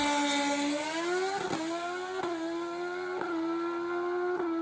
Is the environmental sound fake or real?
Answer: real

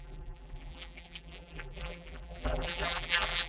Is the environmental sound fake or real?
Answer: fake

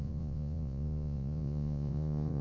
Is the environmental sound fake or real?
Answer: fake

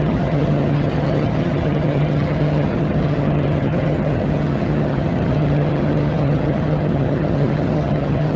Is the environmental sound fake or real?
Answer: fake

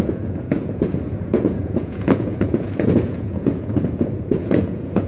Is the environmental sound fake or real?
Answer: fake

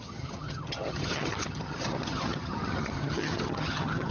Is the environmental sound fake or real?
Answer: fake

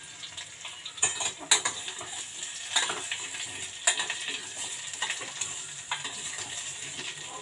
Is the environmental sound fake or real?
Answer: real